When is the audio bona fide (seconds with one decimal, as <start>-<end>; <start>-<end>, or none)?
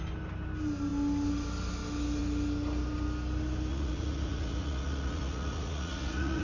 0.0-3.7